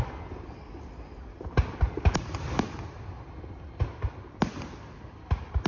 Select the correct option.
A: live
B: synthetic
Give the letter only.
A